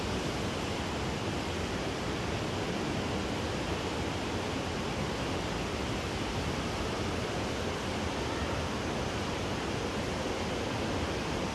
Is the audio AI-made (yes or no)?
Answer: no